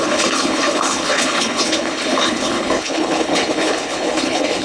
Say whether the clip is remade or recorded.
remade